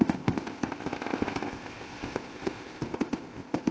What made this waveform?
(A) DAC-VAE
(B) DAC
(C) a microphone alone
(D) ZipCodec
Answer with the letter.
D